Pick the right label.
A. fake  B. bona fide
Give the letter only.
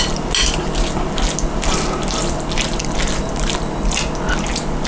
B